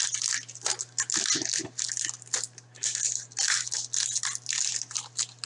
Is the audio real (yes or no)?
yes